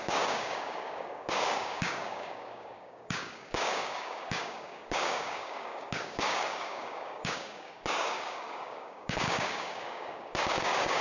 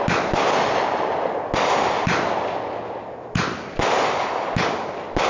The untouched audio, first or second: second